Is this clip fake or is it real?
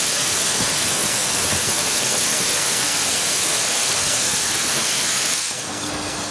fake